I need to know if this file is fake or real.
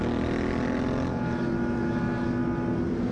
real